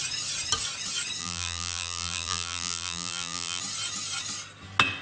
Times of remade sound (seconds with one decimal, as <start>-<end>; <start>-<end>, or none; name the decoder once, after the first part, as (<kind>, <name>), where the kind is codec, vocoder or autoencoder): 1.2-3.6 (vocoder, BigVGAN v2)